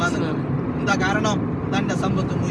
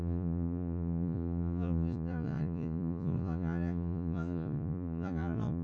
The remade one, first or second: second